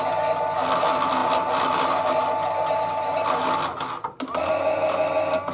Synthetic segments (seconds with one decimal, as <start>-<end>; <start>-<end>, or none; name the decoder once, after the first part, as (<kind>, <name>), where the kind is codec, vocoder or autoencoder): none